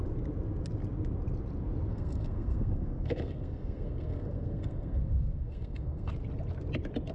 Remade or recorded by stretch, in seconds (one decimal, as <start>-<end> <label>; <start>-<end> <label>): 0.0-1.9 recorded; 1.9-6.1 remade; 6.1-7.1 recorded